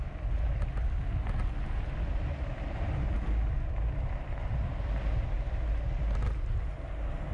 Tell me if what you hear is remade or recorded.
recorded